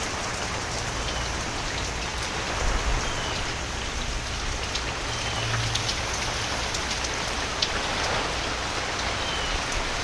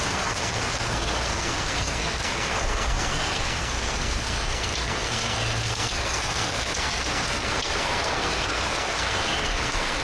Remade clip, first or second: second